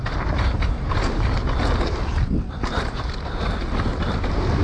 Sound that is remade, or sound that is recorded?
recorded